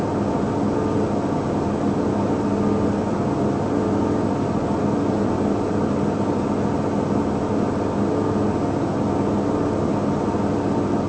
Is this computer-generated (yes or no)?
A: no